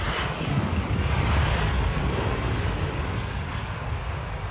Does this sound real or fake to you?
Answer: fake